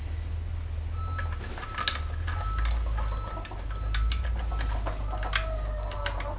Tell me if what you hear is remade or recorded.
recorded